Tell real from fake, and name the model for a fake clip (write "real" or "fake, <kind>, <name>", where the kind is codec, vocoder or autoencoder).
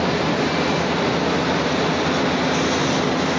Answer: real